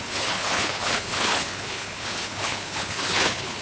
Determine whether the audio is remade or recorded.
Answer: remade